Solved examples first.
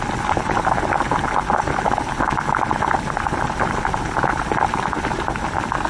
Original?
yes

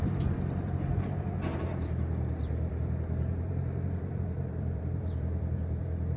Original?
no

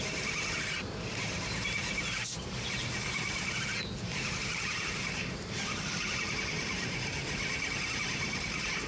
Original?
no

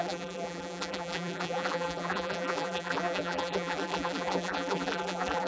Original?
no